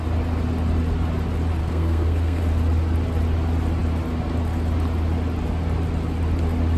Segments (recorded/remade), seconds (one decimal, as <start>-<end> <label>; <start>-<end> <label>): 0.0-1.6 recorded; 1.6-2.4 remade; 2.4-6.8 recorded